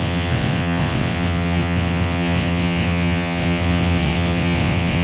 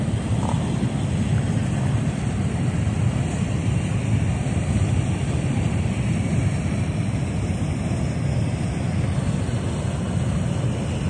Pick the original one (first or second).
second